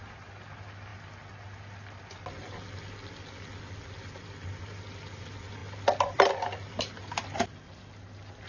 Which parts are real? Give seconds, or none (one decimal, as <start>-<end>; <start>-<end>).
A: 0.0-8.5